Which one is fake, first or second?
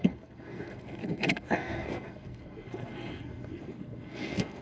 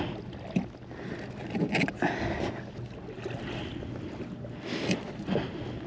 first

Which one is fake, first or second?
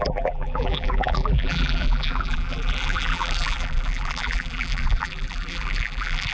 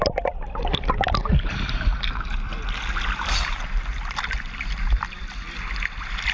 first